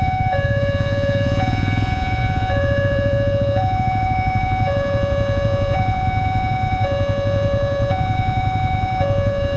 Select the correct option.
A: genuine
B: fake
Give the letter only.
B